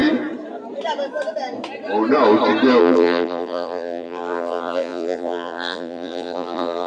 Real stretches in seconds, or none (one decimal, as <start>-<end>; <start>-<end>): 0.0-2.8